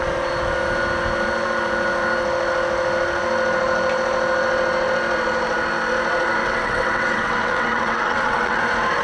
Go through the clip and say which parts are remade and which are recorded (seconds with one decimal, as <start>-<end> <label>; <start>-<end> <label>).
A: 0.0-6.4 recorded; 6.4-8.6 remade; 8.6-9.0 recorded